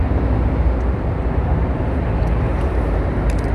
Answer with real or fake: real